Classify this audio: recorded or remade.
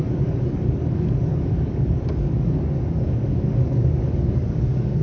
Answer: remade